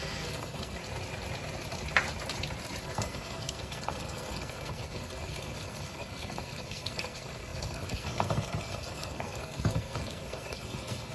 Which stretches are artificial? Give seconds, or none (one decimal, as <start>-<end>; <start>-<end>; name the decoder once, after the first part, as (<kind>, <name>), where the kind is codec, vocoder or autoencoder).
0.0-0.8 (codec, SNAC); 2.8-11.1